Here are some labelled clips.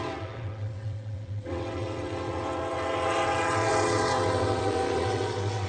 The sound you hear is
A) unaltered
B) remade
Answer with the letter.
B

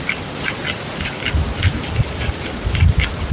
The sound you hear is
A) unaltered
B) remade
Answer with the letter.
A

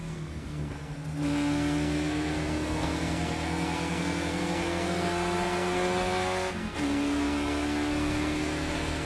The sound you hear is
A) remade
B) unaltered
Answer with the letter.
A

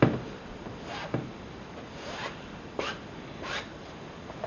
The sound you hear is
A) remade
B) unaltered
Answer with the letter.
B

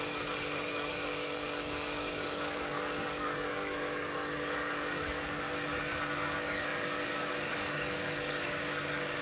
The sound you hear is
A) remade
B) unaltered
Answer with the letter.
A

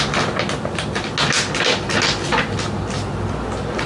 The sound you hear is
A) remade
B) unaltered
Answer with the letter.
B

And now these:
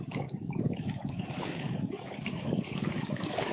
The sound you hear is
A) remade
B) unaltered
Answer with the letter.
A